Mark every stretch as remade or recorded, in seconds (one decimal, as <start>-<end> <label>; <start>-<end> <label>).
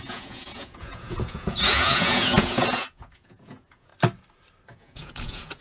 0.0-3.9 remade; 3.9-4.7 recorded; 4.7-5.6 remade